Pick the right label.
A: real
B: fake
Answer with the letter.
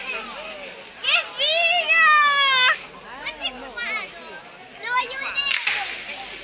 A